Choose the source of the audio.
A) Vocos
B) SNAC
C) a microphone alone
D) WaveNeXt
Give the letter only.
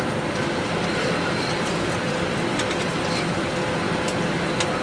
C